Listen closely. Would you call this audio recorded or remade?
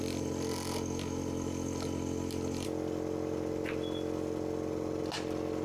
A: recorded